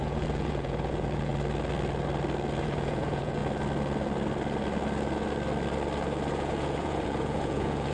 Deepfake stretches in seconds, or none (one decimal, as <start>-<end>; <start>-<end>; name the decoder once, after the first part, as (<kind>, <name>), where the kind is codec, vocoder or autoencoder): 0.0-1.3 (vocoder, Vocos); 2.6-3.4; 6.3-7.9